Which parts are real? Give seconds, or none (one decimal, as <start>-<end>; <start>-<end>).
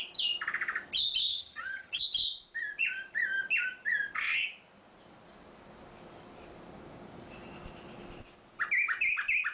0.0-1.3; 2.0-9.5